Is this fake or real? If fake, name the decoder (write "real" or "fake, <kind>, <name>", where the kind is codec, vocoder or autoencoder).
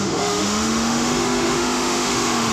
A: fake, autoencoder, DAC-VAE